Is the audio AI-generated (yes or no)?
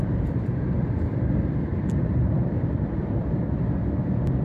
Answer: yes